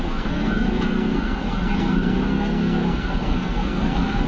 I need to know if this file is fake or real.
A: fake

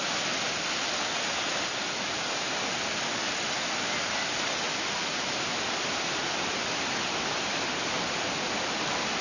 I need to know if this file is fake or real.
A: real